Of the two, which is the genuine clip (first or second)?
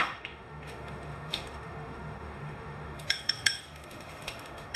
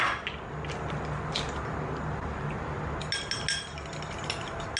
second